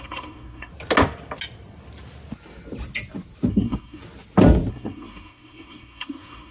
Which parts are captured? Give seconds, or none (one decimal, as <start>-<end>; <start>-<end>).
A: 0.7-3.5; 4.0-4.7